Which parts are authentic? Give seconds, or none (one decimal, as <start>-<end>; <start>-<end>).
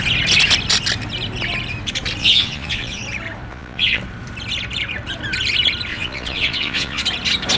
0.0-2.2; 3.0-3.5; 4.0-5.9; 7.0-7.6